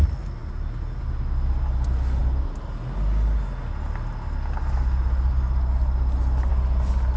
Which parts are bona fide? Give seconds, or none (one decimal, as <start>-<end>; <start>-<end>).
0.0-7.2